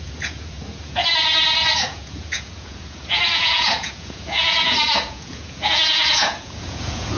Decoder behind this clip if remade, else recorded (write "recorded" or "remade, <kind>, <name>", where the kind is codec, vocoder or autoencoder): remade, vocoder, Vocos